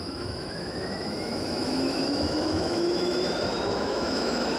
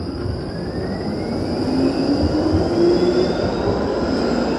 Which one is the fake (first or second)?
first